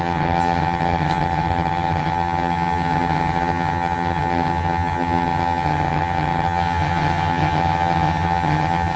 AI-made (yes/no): yes